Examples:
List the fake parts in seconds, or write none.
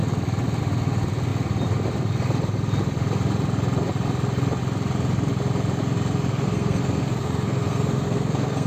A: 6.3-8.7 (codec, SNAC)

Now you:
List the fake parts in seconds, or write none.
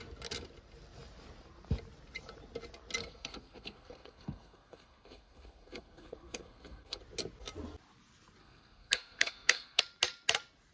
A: 3.0-7.0 (codec, SNAC); 8.4-9.8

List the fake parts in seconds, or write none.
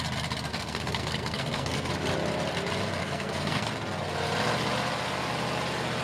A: 0.5-1.9 (codec, SNAC); 3.0-3.7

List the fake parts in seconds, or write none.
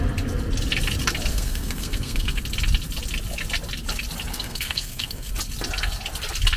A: 1.3-2.4 (codec, SNAC); 4.3-5.3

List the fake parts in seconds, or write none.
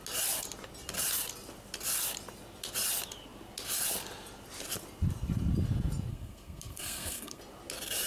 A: 6.1-7.4 (codec, SNAC)